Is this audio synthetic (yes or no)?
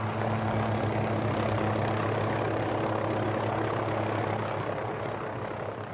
no